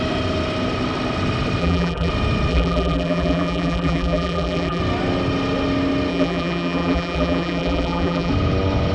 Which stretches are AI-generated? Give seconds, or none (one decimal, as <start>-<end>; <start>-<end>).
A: 1.6-2.1; 2.5-4.8; 6.1-8.3